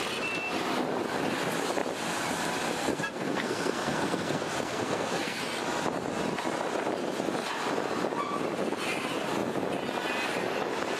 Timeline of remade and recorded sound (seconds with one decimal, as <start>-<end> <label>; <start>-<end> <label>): 0.0-2.8 recorded; 2.8-5.4 remade; 5.4-11.0 recorded